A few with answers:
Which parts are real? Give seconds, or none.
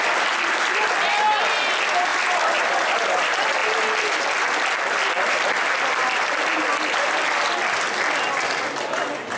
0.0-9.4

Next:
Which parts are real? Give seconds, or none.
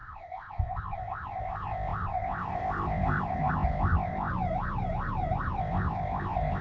4.3-5.6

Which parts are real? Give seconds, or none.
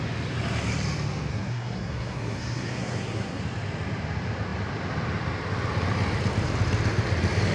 0.0-1.3; 3.4-7.5